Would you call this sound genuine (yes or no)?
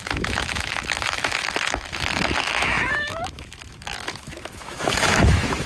no